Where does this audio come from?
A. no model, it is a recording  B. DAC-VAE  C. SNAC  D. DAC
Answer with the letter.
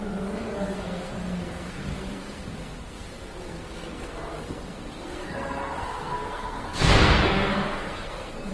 C